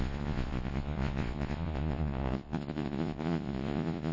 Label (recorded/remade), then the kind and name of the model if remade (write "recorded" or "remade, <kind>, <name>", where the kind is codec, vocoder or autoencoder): remade, vocoder, Vocos